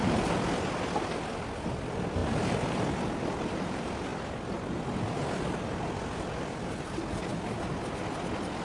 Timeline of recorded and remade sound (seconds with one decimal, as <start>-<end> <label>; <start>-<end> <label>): 0.0-8.6 recorded